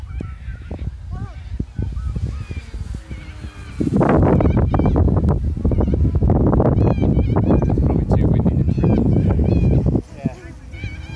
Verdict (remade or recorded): recorded